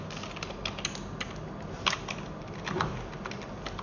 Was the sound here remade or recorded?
recorded